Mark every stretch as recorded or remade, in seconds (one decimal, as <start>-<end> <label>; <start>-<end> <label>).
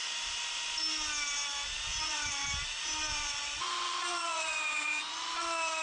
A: 0.0-2.0 recorded; 2.0-2.4 remade; 2.4-3.1 recorded; 3.1-5.8 remade